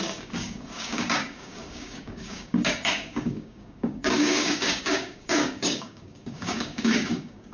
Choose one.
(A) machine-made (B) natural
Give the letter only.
A